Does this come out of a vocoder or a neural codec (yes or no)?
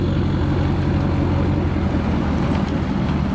no